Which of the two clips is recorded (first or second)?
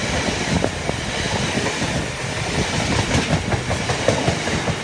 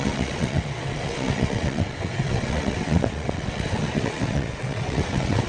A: first